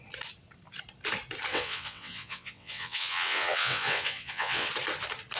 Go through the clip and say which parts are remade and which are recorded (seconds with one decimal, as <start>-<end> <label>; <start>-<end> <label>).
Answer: 0.0-1.5 recorded; 1.5-4.7 remade; 4.7-5.4 recorded